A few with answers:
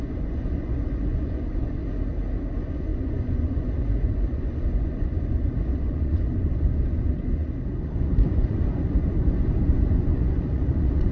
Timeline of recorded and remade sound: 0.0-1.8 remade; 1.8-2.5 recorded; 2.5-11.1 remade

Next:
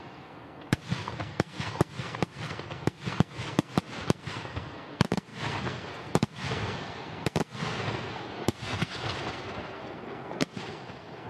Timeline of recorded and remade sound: 0.0-11.3 remade

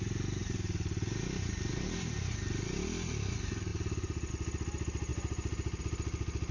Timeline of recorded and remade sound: 0.0-0.4 recorded; 0.4-2.3 remade; 2.3-3.7 recorded; 3.7-4.3 remade; 4.3-5.1 recorded; 5.1-5.8 remade; 5.8-6.5 recorded

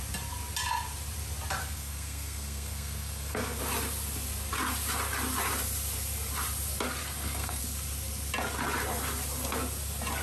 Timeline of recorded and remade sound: 0.0-1.6 recorded; 1.6-3.6 remade; 3.6-7.0 recorded; 7.0-7.6 remade; 7.6-10.2 recorded

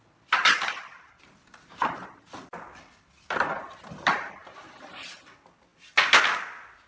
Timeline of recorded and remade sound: 0.0-6.9 recorded

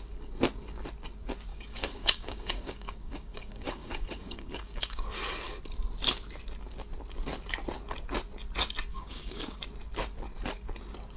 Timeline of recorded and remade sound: 0.0-1.5 recorded; 1.5-5.1 remade; 5.1-8.9 recorded; 8.9-9.6 remade; 9.6-11.2 recorded

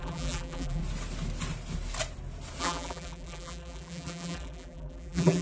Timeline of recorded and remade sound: 0.0-0.8 remade; 0.8-2.6 recorded; 2.6-5.4 remade